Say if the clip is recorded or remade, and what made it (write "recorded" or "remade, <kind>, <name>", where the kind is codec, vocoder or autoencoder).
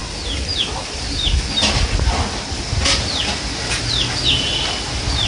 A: recorded